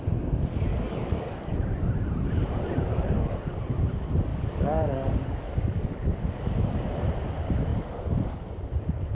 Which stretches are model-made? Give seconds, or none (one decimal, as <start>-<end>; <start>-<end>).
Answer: 0.7-1.9; 2.9-3.6; 4.3-6.9